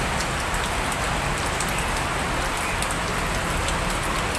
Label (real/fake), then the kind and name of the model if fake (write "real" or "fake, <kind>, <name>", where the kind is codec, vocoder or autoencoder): real